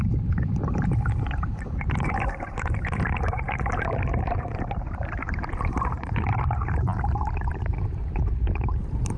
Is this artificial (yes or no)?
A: yes